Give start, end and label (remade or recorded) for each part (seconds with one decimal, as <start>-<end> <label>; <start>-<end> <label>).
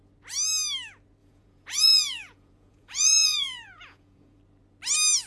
0.0-1.2 recorded; 1.2-4.4 remade; 4.4-5.3 recorded